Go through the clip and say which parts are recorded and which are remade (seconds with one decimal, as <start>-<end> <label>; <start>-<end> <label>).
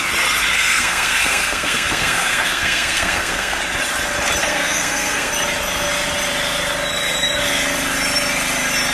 0.0-0.5 recorded; 0.5-3.6 remade; 3.6-4.4 recorded; 4.4-5.3 remade; 5.3-8.9 recorded